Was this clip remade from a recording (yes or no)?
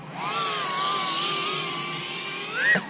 no